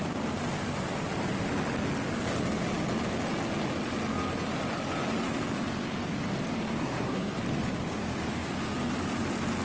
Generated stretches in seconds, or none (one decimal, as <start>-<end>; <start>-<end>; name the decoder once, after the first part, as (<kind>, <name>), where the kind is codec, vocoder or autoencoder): 6.8-7.4 (codec, SNAC)